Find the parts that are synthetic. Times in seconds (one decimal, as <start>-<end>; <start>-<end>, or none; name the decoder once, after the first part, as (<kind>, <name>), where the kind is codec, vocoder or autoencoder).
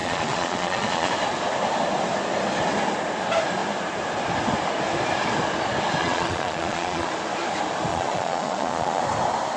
0.0-1.1 (vocoder, Vocos); 6.0-7.1; 7.9-9.0